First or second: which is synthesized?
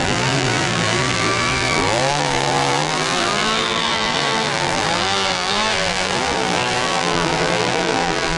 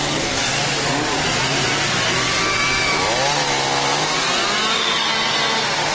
first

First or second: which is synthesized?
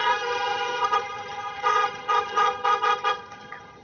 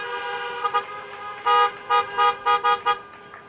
first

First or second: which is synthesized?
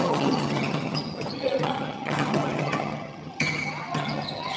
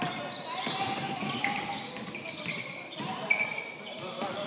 first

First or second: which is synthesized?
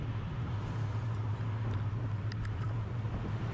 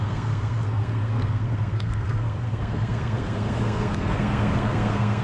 second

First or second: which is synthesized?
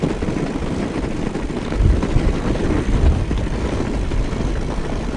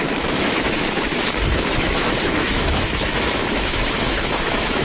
second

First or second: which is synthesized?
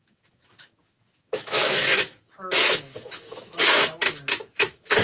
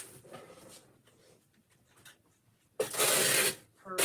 first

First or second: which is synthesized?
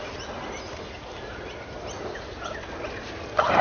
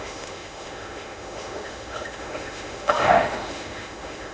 second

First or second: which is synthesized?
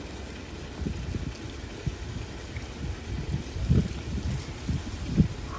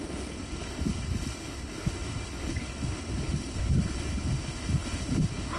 second